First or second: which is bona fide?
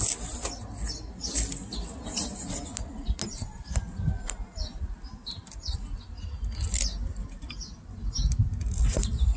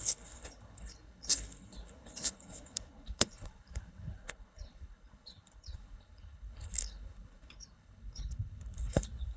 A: first